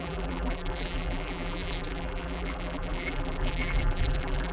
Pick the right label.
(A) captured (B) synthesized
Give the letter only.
B